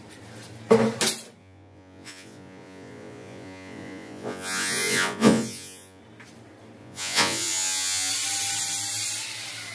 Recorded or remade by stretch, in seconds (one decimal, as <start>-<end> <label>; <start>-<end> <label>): 0.0-1.4 recorded; 1.4-6.0 remade; 6.0-6.8 recorded; 6.8-8.1 remade; 8.1-9.7 recorded